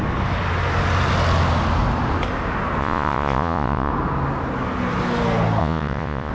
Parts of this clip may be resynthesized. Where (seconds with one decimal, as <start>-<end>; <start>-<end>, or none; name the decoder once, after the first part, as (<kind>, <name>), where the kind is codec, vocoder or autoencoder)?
2.8-3.9 (vocoder, Vocos); 5.6-6.3